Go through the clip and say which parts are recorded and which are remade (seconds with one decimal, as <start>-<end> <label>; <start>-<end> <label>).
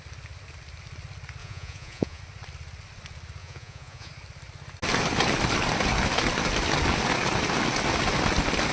0.0-1.4 recorded; 1.4-2.2 remade; 2.2-3.4 recorded; 3.4-4.1 remade; 4.1-8.7 recorded